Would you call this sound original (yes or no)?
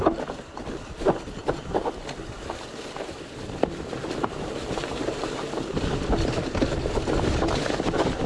no